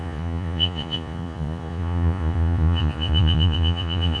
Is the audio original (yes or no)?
no